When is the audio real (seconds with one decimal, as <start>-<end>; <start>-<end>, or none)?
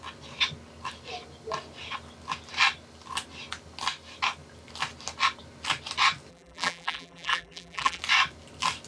0.0-6.3; 8.0-8.9